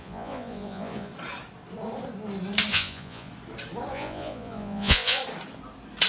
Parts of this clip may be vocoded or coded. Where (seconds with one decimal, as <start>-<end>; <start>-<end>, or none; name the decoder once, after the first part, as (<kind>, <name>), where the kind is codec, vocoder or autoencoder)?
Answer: 0.0-1.1 (vocoder, Vocos); 2.7-3.3; 3.9-5.2